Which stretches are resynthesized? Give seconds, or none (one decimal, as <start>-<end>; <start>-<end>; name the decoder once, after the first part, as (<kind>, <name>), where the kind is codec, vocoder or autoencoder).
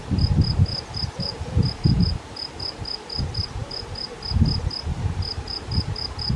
0.7-1.9 (vocoder, BigVGAN v2); 4.9-6.4